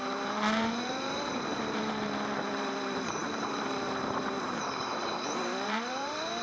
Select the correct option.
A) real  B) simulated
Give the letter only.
B